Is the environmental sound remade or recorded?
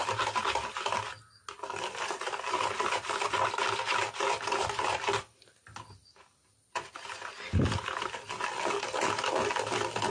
recorded